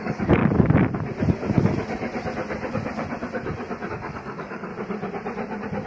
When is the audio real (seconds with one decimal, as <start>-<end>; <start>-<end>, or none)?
0.4-3.9; 4.7-5.9